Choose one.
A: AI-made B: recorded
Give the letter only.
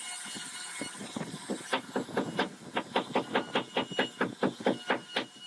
B